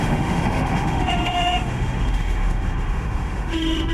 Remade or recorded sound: remade